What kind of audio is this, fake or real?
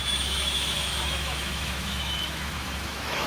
fake